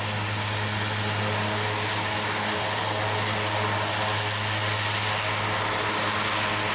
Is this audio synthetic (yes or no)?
no